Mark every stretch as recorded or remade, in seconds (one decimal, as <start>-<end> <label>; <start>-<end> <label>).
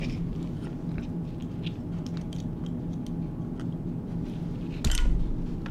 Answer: 0.0-5.7 recorded